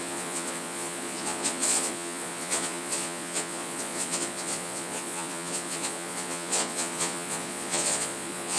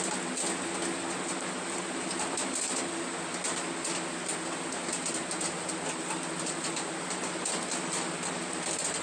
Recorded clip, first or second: second